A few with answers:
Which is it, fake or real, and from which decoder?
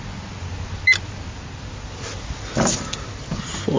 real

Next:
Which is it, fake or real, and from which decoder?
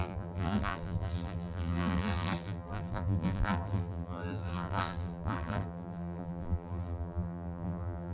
fake, vocoder, BigVGAN v2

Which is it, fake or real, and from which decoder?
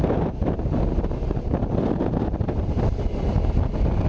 real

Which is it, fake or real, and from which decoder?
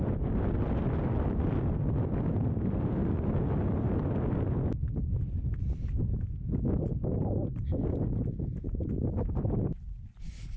real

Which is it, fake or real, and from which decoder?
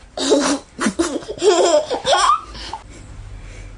real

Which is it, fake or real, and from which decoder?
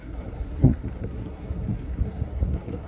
fake, codec, SNAC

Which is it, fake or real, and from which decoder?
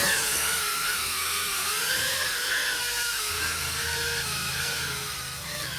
fake, codec, SNAC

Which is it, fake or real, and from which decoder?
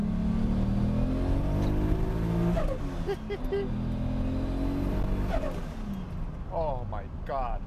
real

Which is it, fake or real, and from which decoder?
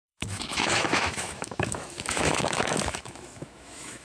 fake, autoencoder, DAC-VAE